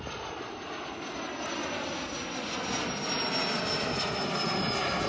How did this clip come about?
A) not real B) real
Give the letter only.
B